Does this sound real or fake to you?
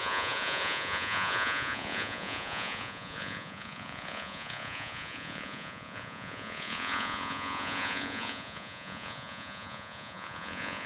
fake